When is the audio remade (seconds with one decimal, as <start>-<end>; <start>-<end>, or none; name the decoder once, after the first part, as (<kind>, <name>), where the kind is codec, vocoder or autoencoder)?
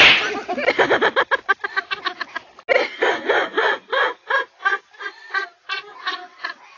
none